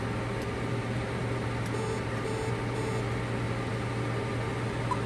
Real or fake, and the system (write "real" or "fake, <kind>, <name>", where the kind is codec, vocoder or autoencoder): real